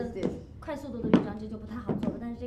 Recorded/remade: recorded